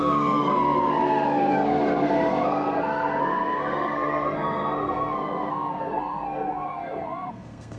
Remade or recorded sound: remade